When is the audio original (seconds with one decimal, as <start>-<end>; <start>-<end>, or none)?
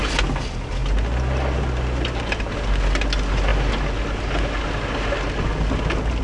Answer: 0.0-6.2